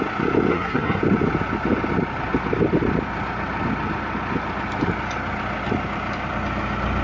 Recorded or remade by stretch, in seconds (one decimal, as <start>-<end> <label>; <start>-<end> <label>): 0.0-0.5 recorded; 0.5-1.0 remade; 1.0-7.0 recorded